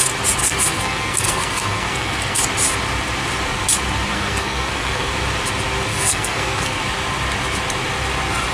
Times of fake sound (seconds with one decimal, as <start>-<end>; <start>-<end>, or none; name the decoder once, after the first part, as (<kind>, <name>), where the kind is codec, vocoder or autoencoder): 0.4-2.4 (codec, SNAC); 4.1-5.1; 5.9-6.8